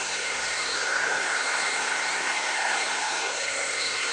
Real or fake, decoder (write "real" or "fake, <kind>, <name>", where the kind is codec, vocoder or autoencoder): fake, codec, SNAC